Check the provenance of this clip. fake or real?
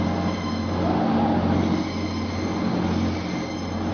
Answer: real